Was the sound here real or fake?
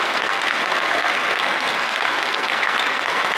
fake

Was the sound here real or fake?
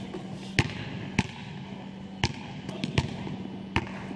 real